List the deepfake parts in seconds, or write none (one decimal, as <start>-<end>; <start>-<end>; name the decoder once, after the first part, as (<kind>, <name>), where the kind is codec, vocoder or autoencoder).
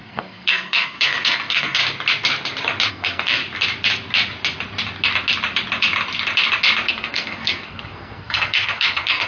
0.0-1.8 (codec, SNAC); 2.9-3.4; 6.9-9.3